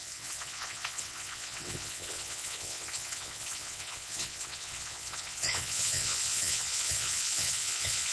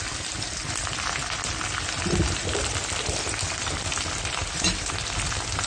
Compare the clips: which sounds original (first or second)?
second